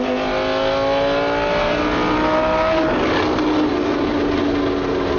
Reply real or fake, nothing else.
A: real